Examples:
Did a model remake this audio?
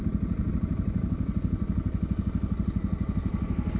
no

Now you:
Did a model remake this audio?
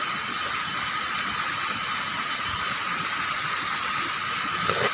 no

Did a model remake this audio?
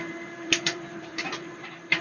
yes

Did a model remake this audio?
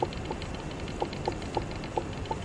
no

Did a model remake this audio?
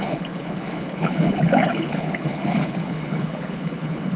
yes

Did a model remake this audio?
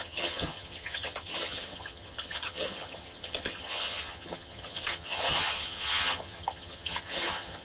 yes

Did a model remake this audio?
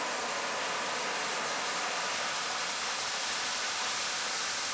no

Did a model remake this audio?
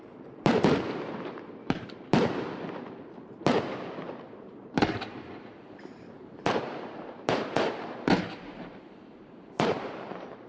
yes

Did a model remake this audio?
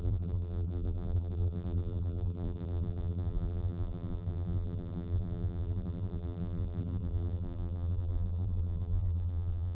yes